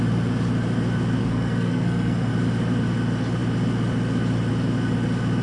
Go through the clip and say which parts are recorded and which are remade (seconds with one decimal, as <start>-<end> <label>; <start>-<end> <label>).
0.0-1.2 recorded; 1.2-2.3 remade; 2.3-5.4 recorded